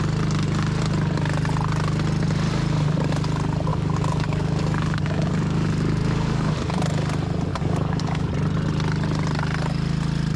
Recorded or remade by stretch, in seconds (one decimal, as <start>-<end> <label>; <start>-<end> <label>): 0.0-3.7 recorded; 3.7-6.5 remade; 6.5-7.5 recorded; 7.5-8.3 remade; 8.3-10.4 recorded